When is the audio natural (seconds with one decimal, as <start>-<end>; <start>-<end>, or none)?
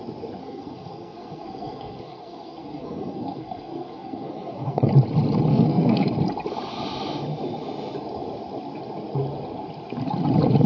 0.0-0.4; 4.9-5.5; 6.1-10.7